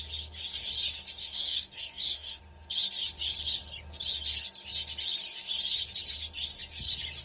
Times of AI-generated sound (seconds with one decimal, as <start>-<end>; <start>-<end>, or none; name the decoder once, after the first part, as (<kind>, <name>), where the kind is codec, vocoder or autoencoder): 1.2-2.4 (codec, DAC)

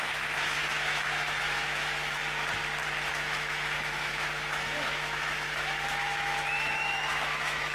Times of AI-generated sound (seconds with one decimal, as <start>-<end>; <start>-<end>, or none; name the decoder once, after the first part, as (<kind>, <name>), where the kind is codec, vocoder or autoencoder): 0.0-2.2 (autoencoder, DAC-VAE); 3.1-7.7

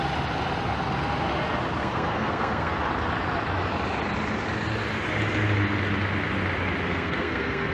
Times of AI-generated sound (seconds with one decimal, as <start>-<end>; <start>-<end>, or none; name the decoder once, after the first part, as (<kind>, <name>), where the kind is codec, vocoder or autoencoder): 1.8-2.7 (codec, SNAC); 6.9-7.7

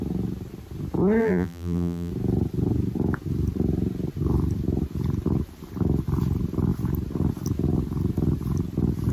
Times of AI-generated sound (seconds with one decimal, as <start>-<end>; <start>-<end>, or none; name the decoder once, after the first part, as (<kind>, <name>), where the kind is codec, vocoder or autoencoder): 1.2-2.1 (vocoder, BigVGAN v2)